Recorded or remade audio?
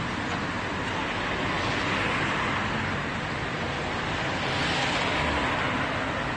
recorded